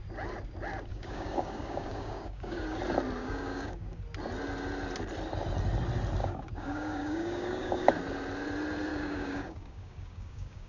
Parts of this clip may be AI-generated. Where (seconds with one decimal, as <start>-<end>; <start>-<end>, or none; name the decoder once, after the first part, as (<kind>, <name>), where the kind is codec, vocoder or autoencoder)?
0.9-2.8 (codec, DAC); 3.2-4.0; 6.2-7.9; 8.9-10.7